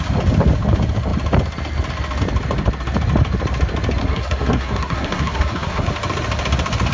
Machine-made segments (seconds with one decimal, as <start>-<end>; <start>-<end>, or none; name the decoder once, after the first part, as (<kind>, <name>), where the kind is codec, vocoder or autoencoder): 4.0-5.9 (codec, SNAC)